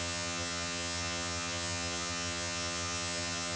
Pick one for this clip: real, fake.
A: fake